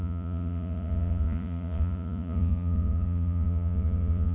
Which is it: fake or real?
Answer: fake